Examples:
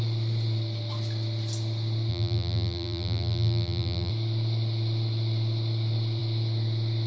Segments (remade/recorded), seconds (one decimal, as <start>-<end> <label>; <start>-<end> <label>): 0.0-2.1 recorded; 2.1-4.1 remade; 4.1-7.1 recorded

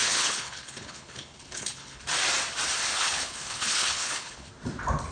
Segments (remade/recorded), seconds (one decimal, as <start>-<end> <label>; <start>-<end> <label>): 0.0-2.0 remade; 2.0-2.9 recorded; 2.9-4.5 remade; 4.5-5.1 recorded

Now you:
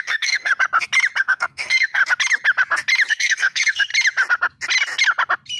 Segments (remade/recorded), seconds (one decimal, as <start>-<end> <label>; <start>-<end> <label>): 0.0-0.5 remade; 0.5-1.2 recorded; 1.2-2.0 remade; 2.0-3.1 recorded; 3.1-3.9 remade; 3.9-5.6 recorded

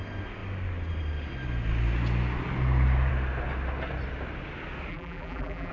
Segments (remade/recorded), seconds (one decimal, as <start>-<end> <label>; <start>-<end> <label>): 0.0-4.9 recorded; 4.9-5.7 remade

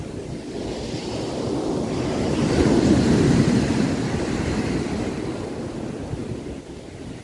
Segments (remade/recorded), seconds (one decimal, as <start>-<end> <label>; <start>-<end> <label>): 0.0-7.2 recorded

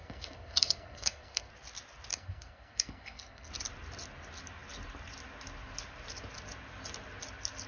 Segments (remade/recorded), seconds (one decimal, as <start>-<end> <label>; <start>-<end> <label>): 0.0-1.5 remade; 1.5-2.1 recorded; 2.1-3.5 remade; 3.5-7.7 recorded

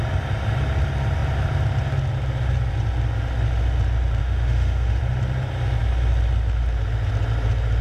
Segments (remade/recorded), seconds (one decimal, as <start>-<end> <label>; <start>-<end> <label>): 0.0-4.2 recorded; 4.2-5.0 remade; 5.0-7.8 recorded